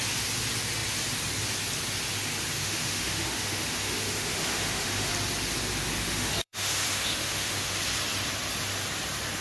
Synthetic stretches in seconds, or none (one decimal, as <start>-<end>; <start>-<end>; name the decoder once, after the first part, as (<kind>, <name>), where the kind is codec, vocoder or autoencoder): 2.5-5.1 (autoencoder, DAC-VAE); 6.0-7.8